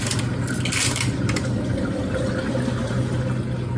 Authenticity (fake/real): real